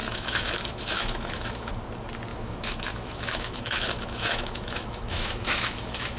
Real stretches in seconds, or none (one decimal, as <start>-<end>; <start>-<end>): 1.7-2.3